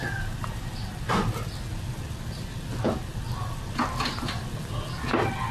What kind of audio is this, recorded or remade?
recorded